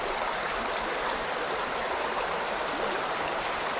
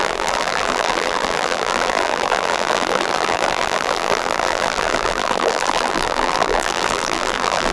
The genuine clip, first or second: first